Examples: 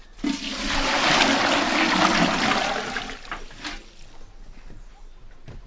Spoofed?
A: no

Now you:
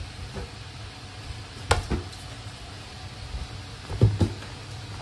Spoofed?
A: no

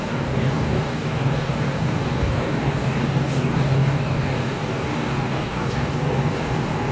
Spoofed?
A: yes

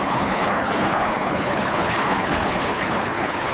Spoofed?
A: yes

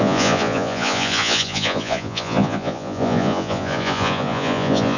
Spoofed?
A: yes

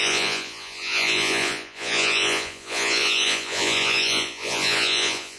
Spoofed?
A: yes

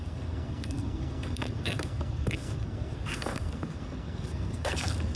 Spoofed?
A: yes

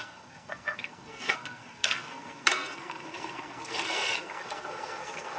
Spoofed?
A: yes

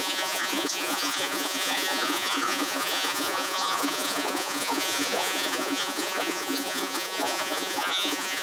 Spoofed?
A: yes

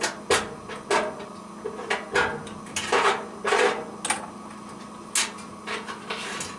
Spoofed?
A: no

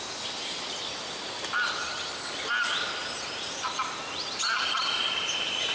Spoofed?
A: no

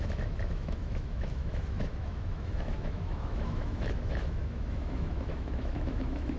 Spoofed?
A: yes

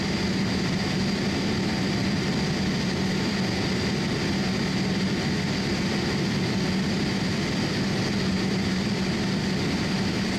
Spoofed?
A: no